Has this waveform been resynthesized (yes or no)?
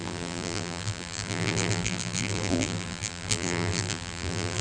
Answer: yes